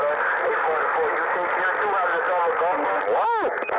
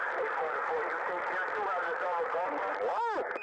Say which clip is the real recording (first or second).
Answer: first